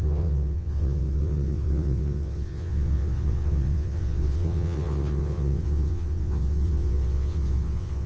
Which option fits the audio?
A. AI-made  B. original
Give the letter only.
A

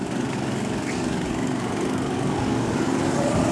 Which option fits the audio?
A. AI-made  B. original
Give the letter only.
A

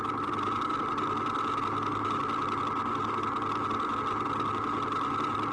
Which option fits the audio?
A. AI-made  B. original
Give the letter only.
B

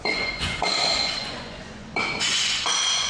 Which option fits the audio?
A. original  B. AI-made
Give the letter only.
B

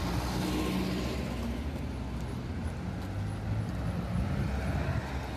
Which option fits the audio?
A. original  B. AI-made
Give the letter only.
A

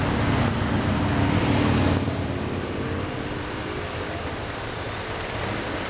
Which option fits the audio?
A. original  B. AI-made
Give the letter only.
A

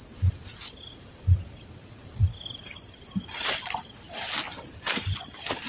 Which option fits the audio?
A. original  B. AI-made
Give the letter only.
A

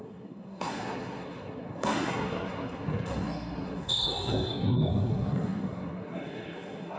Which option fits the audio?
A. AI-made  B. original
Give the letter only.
A